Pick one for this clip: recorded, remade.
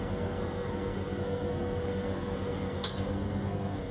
remade